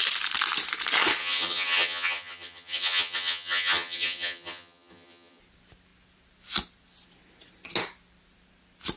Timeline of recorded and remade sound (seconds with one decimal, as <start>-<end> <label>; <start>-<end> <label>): 0.0-1.2 recorded; 1.2-5.4 remade; 5.4-9.0 recorded